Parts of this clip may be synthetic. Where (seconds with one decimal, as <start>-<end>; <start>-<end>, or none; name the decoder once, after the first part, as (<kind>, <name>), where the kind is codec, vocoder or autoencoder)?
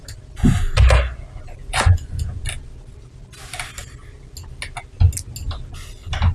1.6-2.4 (vocoder, Vocos)